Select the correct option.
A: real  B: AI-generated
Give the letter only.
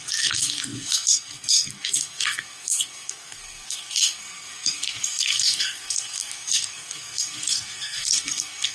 B